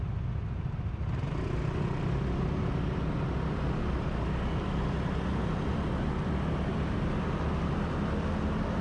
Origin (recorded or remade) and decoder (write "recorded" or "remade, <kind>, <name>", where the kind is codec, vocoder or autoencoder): recorded